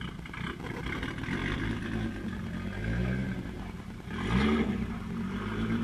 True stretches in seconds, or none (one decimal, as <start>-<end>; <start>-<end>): 0.0-5.8